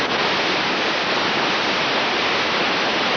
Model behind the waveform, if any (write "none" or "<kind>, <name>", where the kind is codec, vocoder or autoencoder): none